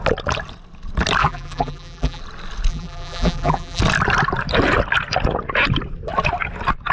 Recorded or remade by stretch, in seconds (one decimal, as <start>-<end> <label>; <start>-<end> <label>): 0.0-1.2 recorded; 1.2-2.2 remade; 2.2-2.7 recorded; 2.7-3.8 remade; 3.8-6.9 recorded